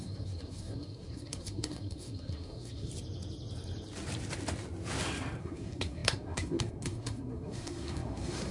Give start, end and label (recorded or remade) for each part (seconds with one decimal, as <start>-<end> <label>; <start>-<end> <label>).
0.0-2.9 remade; 2.9-5.4 recorded; 5.4-8.5 remade